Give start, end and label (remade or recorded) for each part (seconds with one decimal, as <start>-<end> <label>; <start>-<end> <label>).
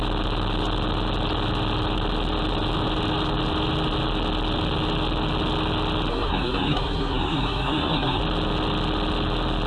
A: 0.0-6.1 recorded; 6.1-8.2 remade; 8.2-9.7 recorded